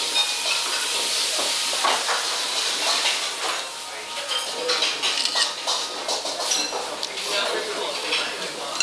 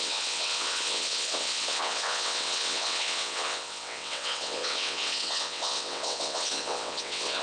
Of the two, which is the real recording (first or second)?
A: first